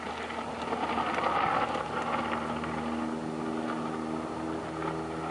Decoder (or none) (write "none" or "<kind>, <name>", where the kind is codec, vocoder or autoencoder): none